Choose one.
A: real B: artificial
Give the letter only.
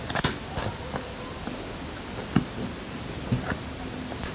A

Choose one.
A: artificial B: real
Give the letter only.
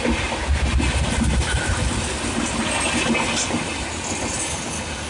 B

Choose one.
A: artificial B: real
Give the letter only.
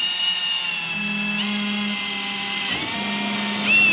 B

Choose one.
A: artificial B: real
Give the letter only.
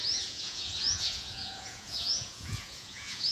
A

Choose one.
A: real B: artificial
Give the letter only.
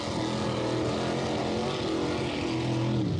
A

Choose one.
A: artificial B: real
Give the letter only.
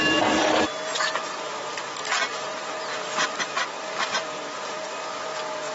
A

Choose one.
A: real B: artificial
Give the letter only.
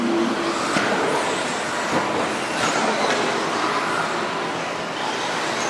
A